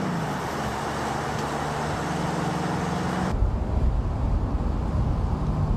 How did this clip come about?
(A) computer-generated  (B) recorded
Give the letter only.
B